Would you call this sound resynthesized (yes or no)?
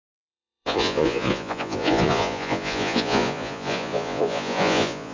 yes